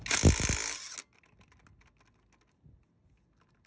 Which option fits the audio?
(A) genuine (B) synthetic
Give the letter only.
A